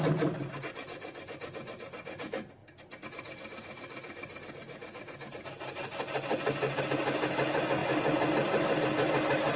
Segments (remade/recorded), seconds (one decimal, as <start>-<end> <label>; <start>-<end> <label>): 0.0-9.6 recorded